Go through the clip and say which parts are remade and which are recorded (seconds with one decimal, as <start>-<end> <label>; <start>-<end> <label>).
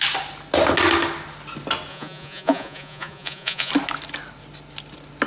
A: 0.0-1.9 recorded; 1.9-3.7 remade; 3.7-5.3 recorded